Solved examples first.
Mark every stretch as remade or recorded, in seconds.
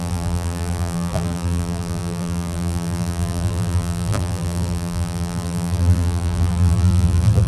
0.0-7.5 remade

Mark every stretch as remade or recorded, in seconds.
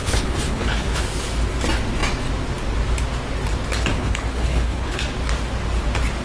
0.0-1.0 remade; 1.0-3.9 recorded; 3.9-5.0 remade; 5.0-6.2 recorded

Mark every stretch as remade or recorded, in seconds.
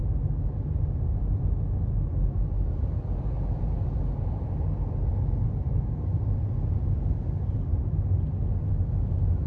0.0-9.5 recorded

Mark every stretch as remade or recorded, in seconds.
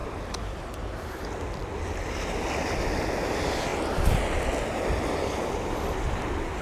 0.0-1.1 remade; 1.1-6.6 recorded